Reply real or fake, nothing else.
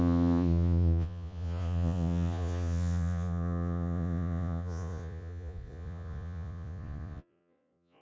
fake